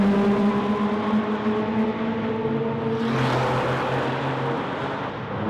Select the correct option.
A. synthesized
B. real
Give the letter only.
B